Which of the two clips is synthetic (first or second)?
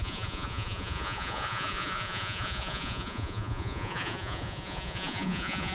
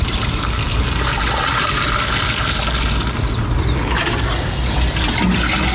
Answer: first